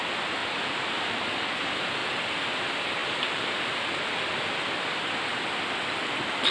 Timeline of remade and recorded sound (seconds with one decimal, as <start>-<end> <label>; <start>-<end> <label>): 0.0-0.4 recorded; 0.4-1.6 remade; 1.6-3.0 recorded; 3.0-3.9 remade; 3.9-6.5 recorded